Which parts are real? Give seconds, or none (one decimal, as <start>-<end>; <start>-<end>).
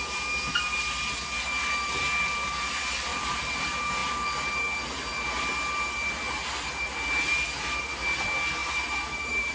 0.0-3.1; 3.6-8.6